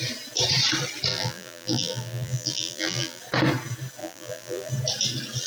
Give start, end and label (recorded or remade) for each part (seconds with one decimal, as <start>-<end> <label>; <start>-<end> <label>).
0.0-1.1 recorded; 1.1-3.2 remade; 3.2-4.0 recorded; 4.0-4.7 remade; 4.7-5.5 recorded